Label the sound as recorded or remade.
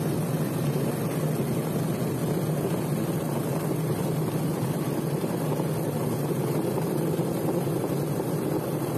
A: recorded